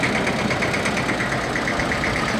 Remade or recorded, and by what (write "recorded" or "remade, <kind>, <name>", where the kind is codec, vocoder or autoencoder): recorded